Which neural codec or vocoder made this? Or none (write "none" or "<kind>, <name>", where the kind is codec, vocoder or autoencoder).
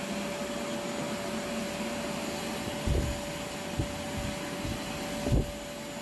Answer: none